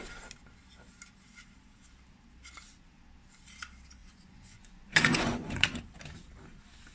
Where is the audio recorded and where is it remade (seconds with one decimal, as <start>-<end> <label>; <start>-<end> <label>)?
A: 0.0-4.0 recorded; 4.0-6.0 remade; 6.0-6.9 recorded

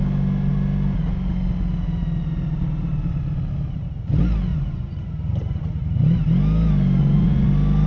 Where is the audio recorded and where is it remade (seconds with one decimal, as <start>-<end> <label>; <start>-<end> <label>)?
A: 0.0-4.5 recorded; 4.5-5.1 remade; 5.1-7.0 recorded; 7.0-7.5 remade; 7.5-7.9 recorded

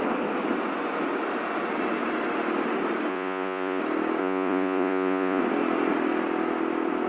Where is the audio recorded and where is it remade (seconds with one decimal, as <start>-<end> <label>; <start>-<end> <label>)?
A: 0.0-3.1 recorded; 3.1-3.8 remade; 3.8-4.2 recorded; 4.2-5.4 remade; 5.4-7.1 recorded

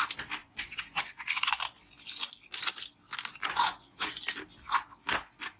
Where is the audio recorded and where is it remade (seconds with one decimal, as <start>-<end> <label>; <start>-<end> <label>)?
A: 0.0-0.4 recorded; 0.4-1.5 remade; 1.5-3.4 recorded; 3.4-4.2 remade; 4.2-5.6 recorded

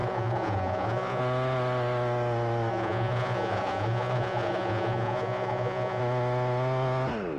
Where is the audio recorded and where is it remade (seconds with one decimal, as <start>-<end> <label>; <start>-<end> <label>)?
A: 0.0-1.2 remade; 1.2-2.7 recorded; 2.7-6.0 remade; 6.0-7.4 recorded